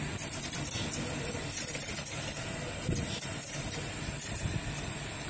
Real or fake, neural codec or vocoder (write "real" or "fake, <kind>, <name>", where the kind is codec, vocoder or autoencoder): fake, vocoder, BigVGAN v2